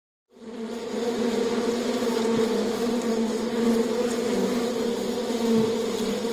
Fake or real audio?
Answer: real